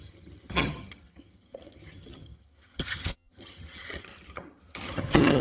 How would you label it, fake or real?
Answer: fake